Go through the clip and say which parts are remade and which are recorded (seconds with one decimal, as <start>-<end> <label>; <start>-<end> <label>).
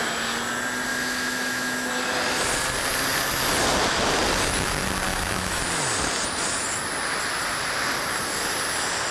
0.0-0.9 recorded; 0.9-1.9 remade; 1.9-5.1 recorded; 5.1-5.6 remade; 5.6-9.1 recorded